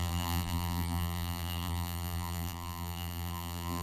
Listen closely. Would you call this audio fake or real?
fake